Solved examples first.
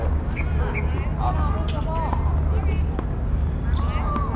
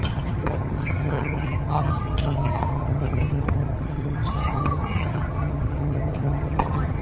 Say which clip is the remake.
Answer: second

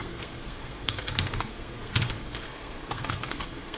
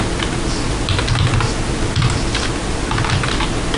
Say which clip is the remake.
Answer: first